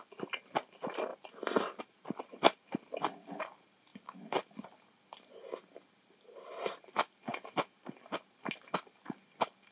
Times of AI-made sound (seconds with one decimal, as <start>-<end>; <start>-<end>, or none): none